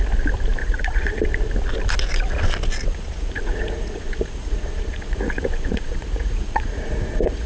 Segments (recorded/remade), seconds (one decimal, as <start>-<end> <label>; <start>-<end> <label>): 0.0-0.6 recorded; 0.6-1.2 remade; 1.2-2.9 recorded; 2.9-7.5 remade